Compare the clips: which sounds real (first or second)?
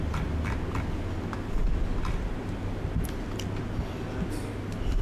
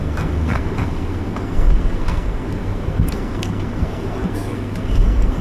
first